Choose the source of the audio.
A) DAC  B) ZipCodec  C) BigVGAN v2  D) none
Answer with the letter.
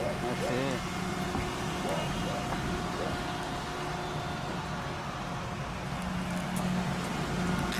D